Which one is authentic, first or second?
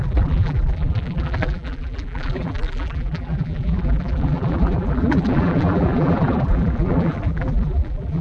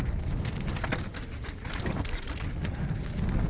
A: second